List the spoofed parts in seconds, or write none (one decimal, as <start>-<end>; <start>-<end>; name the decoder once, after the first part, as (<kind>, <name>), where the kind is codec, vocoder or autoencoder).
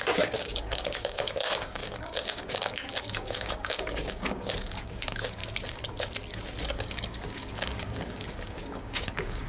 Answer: 0.0-5.4 (codec, DAC); 6.6-9.5